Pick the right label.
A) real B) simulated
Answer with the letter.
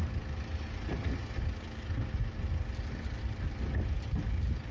A